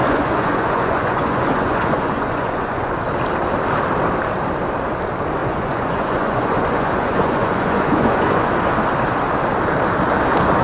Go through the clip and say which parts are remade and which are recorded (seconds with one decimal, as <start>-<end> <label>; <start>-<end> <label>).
0.0-2.9 remade; 2.9-5.4 recorded; 5.4-8.4 remade; 8.4-10.6 recorded